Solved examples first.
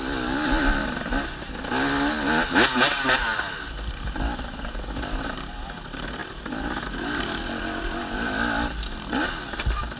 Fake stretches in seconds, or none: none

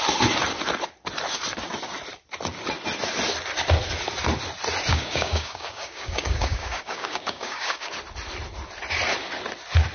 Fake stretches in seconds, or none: 4.9-7.9 (codec, DAC)